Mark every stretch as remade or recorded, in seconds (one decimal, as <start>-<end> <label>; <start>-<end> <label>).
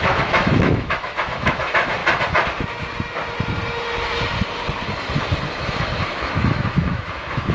0.0-2.0 remade; 2.0-5.5 recorded; 5.5-7.5 remade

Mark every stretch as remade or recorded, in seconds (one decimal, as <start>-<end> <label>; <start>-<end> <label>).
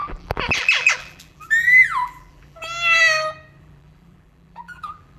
0.0-2.6 remade; 2.6-3.6 recorded; 3.6-5.2 remade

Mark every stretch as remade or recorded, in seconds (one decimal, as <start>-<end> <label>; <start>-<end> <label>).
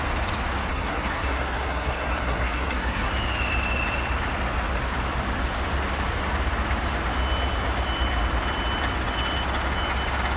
0.0-0.7 recorded; 0.7-3.1 remade; 3.1-10.4 recorded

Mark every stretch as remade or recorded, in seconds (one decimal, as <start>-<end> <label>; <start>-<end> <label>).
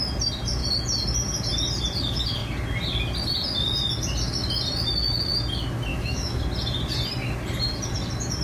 0.0-5.9 recorded; 5.9-6.4 remade; 6.4-8.4 recorded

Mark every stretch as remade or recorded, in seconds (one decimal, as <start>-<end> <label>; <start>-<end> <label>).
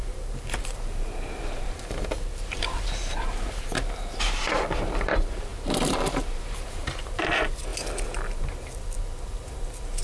0.0-10.0 remade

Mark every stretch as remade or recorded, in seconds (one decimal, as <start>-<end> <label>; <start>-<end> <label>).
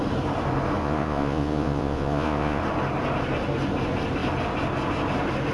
0.0-0.8 recorded; 0.8-2.6 remade; 2.6-5.5 recorded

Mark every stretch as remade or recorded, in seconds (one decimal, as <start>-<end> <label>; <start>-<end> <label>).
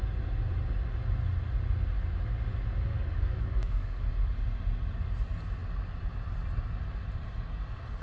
0.0-2.9 recorded; 2.9-4.0 remade; 4.0-8.0 recorded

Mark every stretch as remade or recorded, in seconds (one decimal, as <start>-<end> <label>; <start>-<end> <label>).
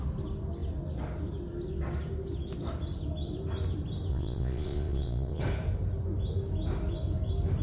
0.0-4.1 recorded; 4.1-5.4 remade; 5.4-7.6 recorded